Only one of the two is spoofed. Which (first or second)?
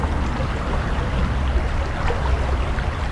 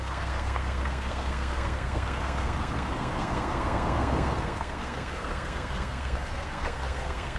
second